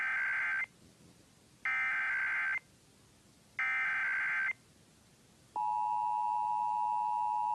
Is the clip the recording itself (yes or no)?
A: yes